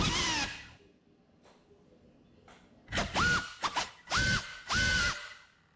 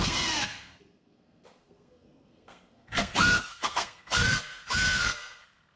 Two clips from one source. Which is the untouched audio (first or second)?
first